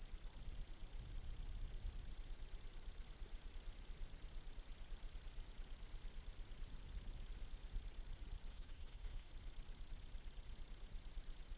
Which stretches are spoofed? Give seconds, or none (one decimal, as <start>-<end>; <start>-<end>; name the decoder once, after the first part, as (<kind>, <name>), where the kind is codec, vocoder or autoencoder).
8.5-9.3 (codec, DAC)